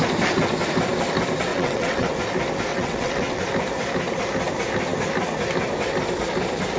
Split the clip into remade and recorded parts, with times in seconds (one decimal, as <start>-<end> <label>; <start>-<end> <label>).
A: 0.0-1.5 recorded; 1.5-2.1 remade; 2.1-2.7 recorded; 2.7-3.4 remade; 3.4-6.8 recorded